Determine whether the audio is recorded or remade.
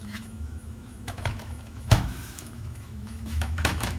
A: remade